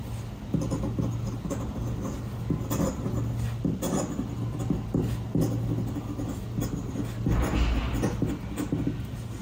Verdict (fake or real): real